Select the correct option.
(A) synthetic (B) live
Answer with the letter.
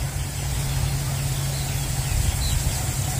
B